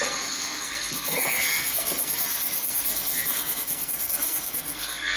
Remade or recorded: remade